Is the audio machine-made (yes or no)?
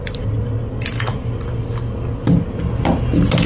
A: no